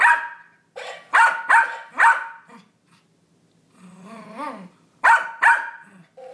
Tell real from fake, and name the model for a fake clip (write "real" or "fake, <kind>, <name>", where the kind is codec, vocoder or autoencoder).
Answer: real